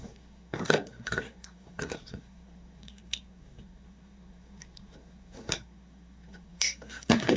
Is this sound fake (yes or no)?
yes